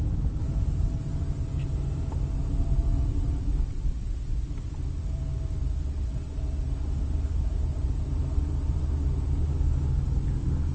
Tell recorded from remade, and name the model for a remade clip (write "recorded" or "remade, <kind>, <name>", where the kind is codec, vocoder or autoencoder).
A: recorded